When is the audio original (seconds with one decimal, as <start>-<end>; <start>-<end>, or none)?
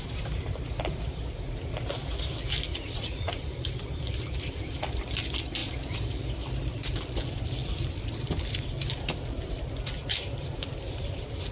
0.0-2.7; 3.3-11.5